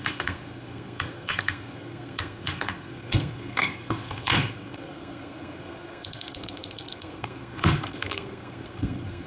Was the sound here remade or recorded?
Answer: remade